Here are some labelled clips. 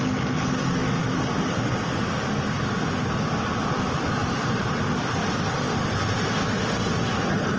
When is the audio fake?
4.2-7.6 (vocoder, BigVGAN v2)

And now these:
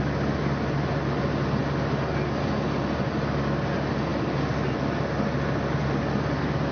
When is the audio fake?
none